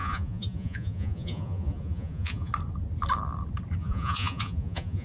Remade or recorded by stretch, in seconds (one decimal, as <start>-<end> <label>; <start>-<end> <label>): 0.0-2.5 remade; 2.5-3.8 recorded; 3.8-5.0 remade